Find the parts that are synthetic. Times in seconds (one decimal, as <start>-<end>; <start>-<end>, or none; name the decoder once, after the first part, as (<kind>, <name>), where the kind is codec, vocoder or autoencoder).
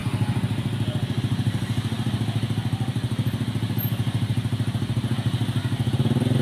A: none